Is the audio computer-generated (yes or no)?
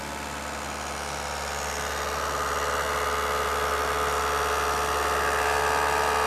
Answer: no